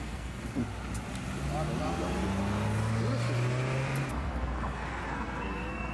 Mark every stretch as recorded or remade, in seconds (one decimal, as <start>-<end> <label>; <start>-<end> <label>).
0.0-0.6 remade; 0.6-4.1 recorded; 4.1-5.9 remade